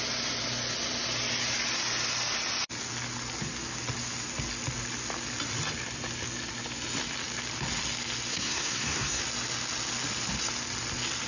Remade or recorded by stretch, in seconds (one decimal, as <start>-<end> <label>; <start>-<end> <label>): 0.0-8.3 recorded; 8.3-9.2 remade; 9.2-11.3 recorded